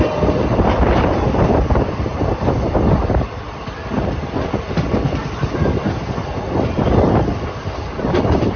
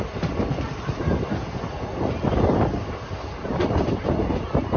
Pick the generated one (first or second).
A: first